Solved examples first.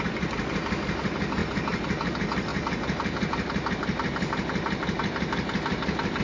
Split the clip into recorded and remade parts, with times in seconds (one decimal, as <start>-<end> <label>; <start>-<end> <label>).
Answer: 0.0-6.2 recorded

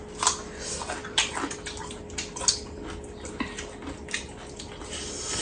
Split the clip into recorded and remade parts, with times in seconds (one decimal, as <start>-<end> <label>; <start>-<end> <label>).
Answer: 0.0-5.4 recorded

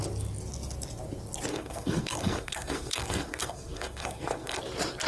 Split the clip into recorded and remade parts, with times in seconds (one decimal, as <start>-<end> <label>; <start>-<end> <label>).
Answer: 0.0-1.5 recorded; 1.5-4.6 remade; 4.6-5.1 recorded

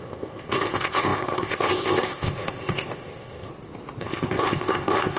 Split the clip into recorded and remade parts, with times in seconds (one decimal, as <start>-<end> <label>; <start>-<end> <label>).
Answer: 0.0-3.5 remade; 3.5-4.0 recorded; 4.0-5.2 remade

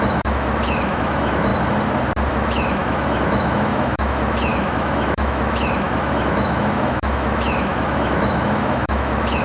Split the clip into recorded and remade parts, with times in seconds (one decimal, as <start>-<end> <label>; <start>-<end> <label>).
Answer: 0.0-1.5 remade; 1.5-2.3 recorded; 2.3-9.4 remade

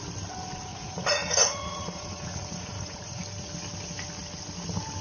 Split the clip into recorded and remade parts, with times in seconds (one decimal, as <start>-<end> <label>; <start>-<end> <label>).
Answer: 0.0-0.7 recorded; 0.7-3.2 remade; 3.2-5.0 recorded

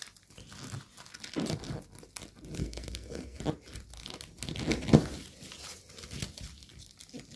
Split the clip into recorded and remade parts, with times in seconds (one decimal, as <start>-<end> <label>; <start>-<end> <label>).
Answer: 0.0-2.6 recorded; 2.6-3.4 remade; 3.4-7.4 recorded

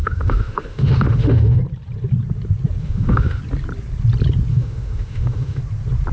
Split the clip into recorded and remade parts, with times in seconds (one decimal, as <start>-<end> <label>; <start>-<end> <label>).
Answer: 0.0-1.6 remade; 1.6-2.8 recorded; 2.8-3.4 remade; 3.4-4.5 recorded; 4.5-5.6 remade; 5.6-6.1 recorded